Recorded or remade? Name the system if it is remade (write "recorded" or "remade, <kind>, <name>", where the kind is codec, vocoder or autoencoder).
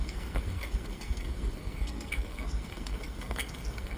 remade, codec, SNAC